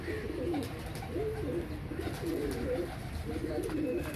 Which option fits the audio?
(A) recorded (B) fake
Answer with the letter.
A